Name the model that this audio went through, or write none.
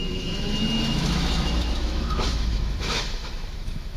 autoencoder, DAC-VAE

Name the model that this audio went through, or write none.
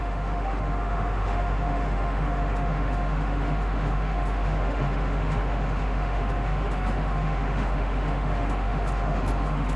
autoencoder, DAC-VAE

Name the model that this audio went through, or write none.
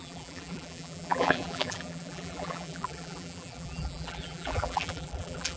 vocoder, BigVGAN v2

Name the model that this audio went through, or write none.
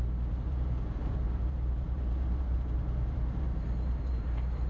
vocoder, BigVGAN v2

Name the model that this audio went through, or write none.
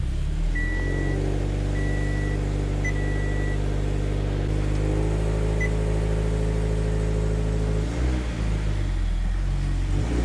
none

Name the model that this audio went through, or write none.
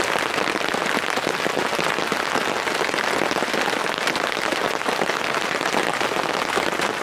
none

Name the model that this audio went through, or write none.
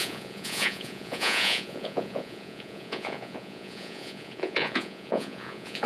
vocoder, Vocos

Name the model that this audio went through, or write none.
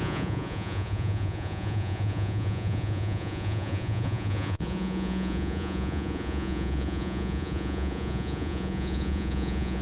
vocoder, Vocos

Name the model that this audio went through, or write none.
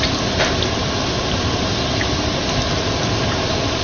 none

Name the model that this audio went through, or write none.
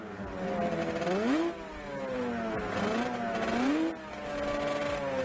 none